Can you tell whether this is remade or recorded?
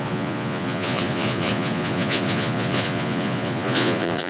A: remade